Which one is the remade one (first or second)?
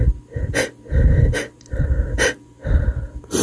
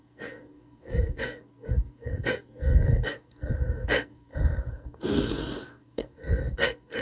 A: second